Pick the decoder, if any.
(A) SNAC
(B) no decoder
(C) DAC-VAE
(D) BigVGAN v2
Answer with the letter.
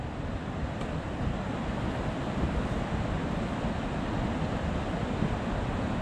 D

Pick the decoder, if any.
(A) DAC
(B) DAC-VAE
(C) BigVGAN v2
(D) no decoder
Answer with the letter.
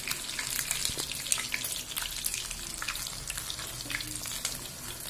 D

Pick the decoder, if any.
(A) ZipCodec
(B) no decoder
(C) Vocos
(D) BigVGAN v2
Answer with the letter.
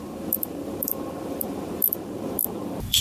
D